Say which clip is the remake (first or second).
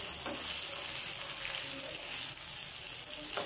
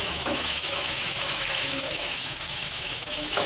second